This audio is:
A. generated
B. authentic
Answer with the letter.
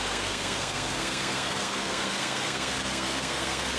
A